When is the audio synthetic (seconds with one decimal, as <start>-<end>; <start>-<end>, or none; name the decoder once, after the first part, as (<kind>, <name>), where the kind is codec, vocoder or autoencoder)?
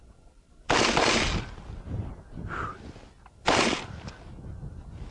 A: none